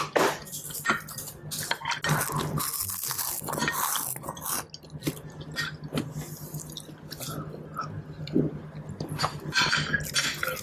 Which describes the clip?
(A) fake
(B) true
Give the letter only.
B